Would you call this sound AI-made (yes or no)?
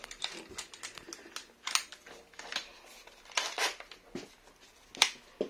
no